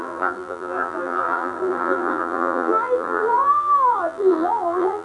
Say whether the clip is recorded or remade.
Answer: remade